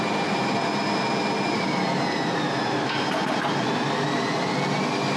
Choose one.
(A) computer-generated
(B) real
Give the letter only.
B